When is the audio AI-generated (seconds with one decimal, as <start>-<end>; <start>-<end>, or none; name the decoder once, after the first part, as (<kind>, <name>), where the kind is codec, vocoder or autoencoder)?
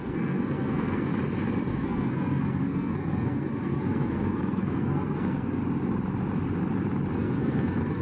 0.0-1.1 (codec, SNAC); 1.7-5.6; 7.2-8.0